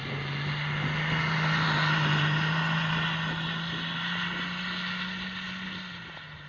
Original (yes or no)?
yes